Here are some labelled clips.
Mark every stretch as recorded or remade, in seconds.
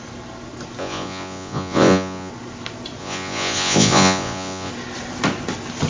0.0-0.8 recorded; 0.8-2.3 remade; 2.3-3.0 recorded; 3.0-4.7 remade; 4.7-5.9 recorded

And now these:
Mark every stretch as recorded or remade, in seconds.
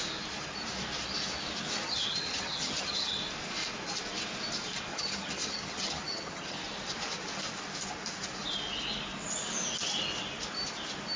0.0-1.8 recorded; 1.8-3.2 remade; 3.2-4.9 recorded; 4.9-6.6 remade; 6.6-11.2 recorded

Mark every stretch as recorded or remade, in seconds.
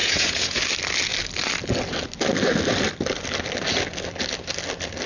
0.0-0.6 remade; 0.6-5.1 recorded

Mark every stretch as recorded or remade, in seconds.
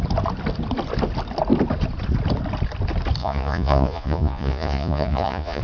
0.0-3.2 recorded; 3.2-5.6 remade